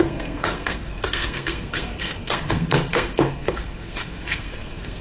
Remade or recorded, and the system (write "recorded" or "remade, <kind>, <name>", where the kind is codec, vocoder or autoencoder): remade, codec, SNAC